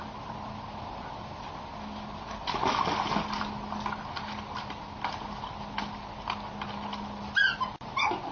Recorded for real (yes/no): yes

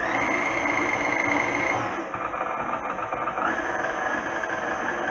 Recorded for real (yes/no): yes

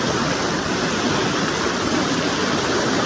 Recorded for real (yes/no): yes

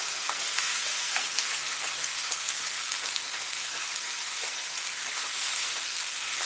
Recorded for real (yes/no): no